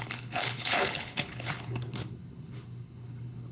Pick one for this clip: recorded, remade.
remade